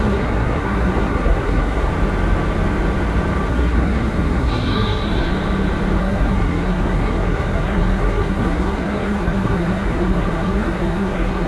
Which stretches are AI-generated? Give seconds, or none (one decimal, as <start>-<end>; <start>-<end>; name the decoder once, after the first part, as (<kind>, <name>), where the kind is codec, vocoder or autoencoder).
0.0-1.9 (codec, SNAC); 3.5-5.3; 6.0-11.5